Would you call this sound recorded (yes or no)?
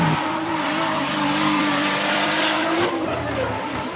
no